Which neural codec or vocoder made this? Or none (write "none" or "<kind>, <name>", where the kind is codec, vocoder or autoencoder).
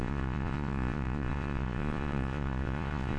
vocoder, Vocos